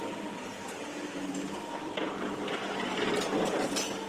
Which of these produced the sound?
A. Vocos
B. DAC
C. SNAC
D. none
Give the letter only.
D